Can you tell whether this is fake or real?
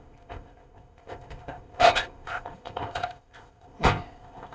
fake